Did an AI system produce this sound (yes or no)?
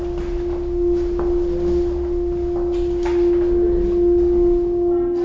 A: no